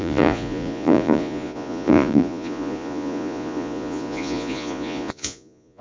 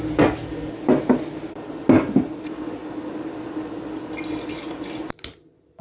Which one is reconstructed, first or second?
first